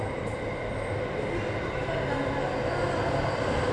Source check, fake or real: real